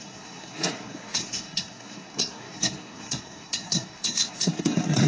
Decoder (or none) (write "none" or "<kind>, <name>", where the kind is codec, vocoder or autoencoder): codec, SNAC